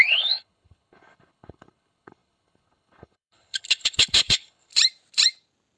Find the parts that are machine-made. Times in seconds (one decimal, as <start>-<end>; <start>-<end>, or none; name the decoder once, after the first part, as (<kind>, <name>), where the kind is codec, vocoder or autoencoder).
0.0-4.7 (codec, HILCodec)